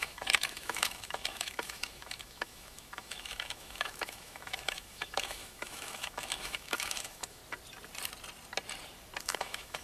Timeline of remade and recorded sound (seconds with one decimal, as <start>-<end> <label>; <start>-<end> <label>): 0.0-7.4 remade; 7.4-9.2 recorded; 9.2-9.8 remade